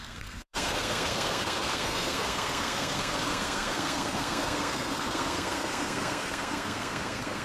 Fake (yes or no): yes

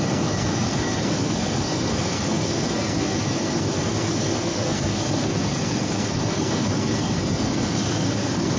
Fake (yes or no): yes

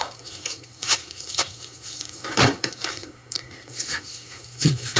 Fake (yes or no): yes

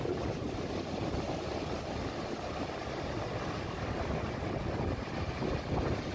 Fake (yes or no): no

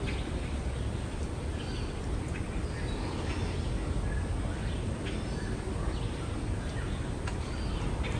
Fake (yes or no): no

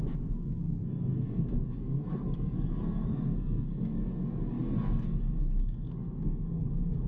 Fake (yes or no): yes